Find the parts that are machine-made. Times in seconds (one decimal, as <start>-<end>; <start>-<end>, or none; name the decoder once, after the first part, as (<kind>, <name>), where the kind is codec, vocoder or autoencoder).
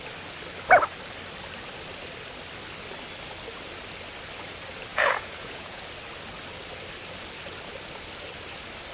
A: 4.9-5.8 (vocoder, Vocos)